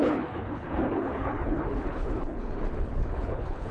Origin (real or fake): fake